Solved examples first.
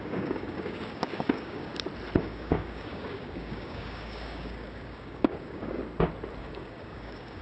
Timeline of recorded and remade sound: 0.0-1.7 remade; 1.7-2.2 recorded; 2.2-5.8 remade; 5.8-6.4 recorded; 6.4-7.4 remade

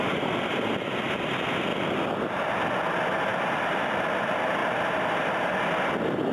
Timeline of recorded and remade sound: 0.0-6.3 recorded